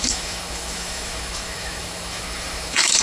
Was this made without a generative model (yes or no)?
no